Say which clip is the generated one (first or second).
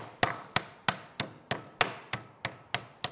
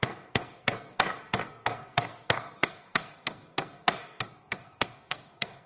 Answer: second